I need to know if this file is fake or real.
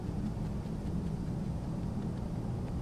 fake